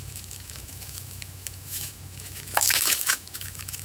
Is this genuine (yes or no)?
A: no